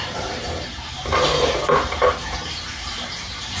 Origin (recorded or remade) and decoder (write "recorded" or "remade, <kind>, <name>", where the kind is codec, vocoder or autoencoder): remade, vocoder, BigVGAN v2